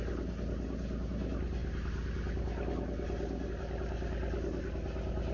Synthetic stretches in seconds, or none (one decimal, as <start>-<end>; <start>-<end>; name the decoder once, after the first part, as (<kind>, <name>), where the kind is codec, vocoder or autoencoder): none